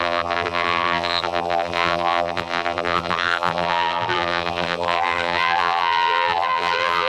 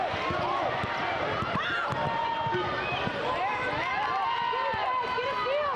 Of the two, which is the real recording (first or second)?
second